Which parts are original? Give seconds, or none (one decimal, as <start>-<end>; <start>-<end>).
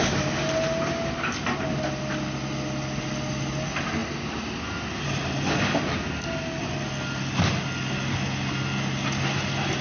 0.0-9.8